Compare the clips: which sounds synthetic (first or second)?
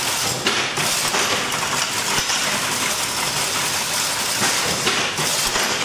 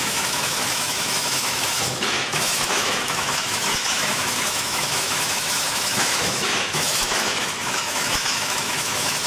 second